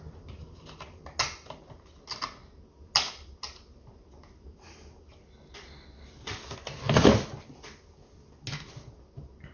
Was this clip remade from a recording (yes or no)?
no